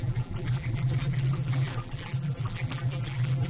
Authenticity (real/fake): fake